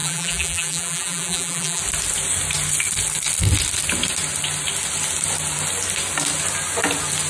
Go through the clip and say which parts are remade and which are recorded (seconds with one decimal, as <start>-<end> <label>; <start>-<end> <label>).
0.0-1.8 remade; 1.8-7.3 recorded